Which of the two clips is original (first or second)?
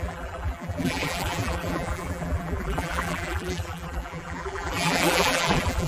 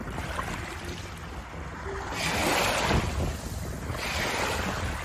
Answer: second